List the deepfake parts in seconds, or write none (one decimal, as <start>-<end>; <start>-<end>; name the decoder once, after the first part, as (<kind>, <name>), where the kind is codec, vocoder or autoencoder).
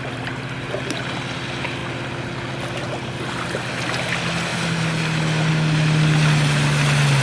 none